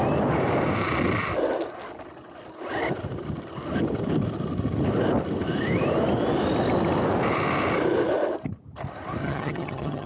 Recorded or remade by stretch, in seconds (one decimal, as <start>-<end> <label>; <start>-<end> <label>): 0.0-9.2 recorded; 9.2-10.1 remade